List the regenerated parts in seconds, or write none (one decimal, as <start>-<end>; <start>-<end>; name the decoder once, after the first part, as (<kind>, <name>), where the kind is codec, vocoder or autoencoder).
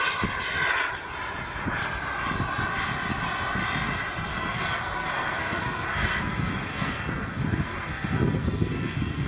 4.3-9.3 (codec, SNAC)